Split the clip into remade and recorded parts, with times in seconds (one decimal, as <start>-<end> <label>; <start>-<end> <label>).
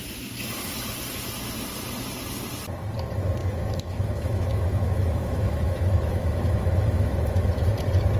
0.0-3.4 recorded; 3.4-7.5 remade; 7.5-8.2 recorded